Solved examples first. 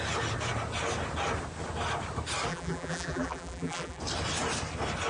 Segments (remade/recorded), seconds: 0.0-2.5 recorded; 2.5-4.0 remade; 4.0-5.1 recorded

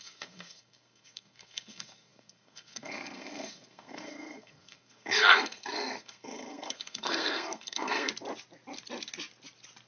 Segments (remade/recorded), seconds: 0.0-8.1 remade; 8.1-9.9 recorded

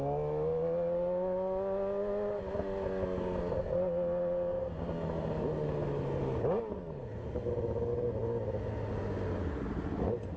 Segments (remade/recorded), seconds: 0.0-10.4 recorded

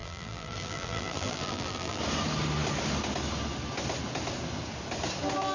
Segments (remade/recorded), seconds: 0.0-2.0 remade; 2.0-5.5 recorded

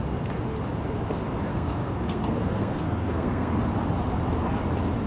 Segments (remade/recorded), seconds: 0.0-1.5 recorded; 1.5-3.6 remade; 3.6-5.1 recorded

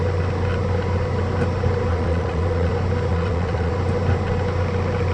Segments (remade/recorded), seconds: 0.0-1.9 recorded; 1.9-2.7 remade; 2.7-3.1 recorded; 3.1-3.7 remade; 3.7-5.1 recorded